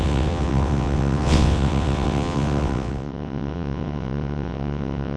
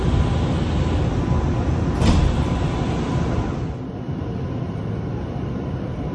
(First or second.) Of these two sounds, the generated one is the first